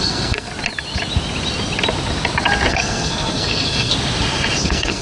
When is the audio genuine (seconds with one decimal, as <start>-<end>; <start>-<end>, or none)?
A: 0.5-2.7; 3.9-4.6